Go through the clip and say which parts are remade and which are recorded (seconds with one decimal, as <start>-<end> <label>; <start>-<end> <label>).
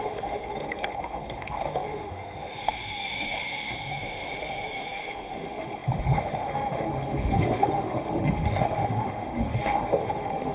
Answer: 0.0-10.5 remade